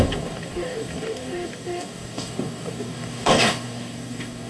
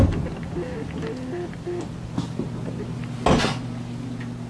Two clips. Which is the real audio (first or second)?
second